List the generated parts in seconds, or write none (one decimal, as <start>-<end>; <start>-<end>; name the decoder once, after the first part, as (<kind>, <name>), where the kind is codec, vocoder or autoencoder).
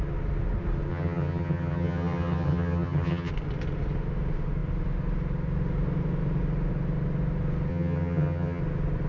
0.9-3.3 (vocoder, HiFi-GAN); 7.7-8.6